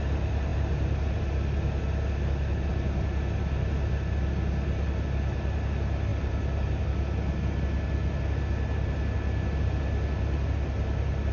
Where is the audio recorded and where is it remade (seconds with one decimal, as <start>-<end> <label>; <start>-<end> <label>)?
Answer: 0.0-11.3 recorded